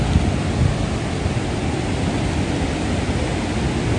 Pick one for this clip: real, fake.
real